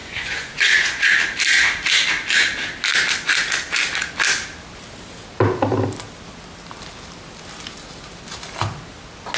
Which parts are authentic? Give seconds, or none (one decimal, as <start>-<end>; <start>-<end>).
1.1-9.4